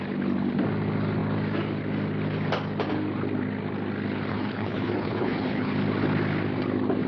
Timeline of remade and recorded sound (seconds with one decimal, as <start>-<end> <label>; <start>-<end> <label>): 0.0-4.3 recorded; 4.3-5.7 remade; 5.7-7.1 recorded